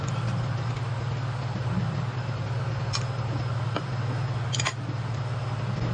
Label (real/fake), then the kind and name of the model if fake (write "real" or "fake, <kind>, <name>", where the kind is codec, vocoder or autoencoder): real